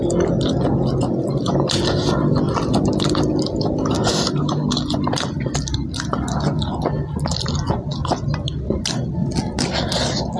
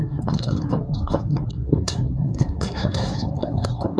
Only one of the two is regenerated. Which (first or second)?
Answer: second